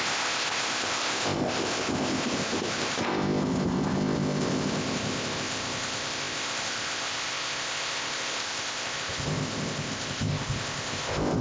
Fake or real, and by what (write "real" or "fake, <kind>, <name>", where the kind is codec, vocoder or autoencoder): fake, codec, ZipCodec